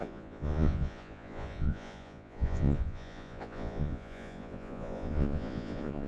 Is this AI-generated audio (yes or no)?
yes